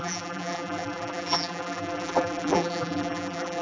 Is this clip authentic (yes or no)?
no